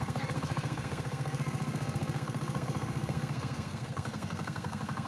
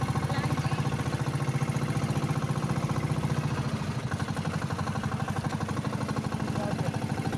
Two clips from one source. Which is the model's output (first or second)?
first